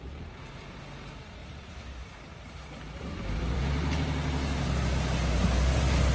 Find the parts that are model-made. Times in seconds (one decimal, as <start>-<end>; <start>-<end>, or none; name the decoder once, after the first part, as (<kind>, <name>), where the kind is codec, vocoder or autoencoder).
1.4-3.6 (vocoder, BigVGAN v2)